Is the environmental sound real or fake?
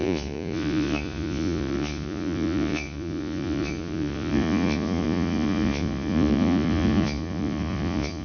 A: fake